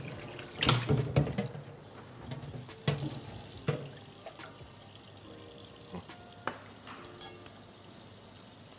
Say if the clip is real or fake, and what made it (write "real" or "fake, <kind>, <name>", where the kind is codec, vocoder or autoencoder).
real